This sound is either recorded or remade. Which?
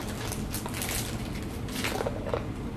recorded